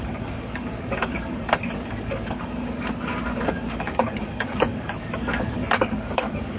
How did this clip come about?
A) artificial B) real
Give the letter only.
A